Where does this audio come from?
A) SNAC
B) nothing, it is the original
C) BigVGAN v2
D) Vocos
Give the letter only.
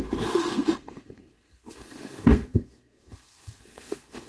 A